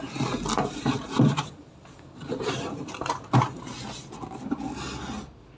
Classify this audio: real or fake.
real